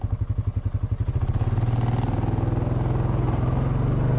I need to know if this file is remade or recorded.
recorded